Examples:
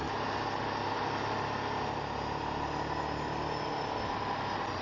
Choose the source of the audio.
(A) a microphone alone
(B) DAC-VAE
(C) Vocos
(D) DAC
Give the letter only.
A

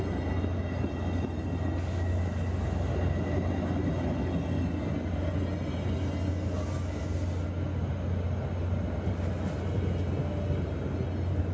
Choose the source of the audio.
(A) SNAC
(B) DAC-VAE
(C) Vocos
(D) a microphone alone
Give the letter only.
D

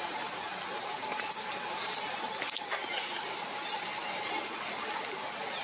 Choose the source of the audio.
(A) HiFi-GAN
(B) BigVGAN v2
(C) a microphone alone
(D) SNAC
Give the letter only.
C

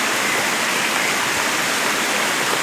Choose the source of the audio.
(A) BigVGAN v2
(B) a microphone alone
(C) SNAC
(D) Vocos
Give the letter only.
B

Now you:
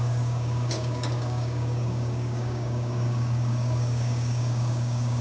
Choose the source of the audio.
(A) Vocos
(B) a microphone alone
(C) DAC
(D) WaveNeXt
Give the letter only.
C